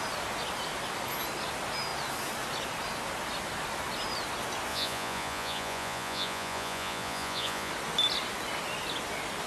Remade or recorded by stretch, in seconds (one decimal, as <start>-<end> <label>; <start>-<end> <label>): 0.0-4.7 recorded; 4.7-7.7 remade; 7.7-9.5 recorded